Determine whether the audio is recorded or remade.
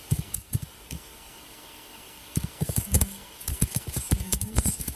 remade